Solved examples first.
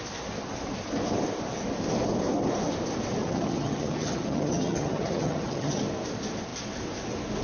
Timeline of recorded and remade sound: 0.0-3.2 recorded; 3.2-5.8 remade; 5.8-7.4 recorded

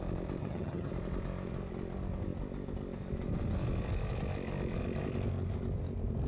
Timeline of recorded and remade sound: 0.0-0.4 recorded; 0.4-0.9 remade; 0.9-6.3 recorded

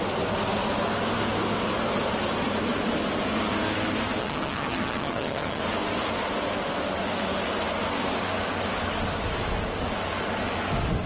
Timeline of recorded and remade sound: 0.0-4.2 recorded; 4.2-5.6 remade; 5.6-11.1 recorded

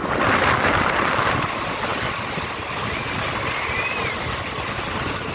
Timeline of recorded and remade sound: 0.0-5.3 recorded